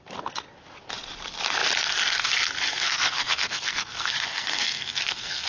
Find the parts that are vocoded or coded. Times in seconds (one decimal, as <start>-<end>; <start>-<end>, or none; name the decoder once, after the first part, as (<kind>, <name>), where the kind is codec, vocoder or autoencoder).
2.7-5.5 (codec, SNAC)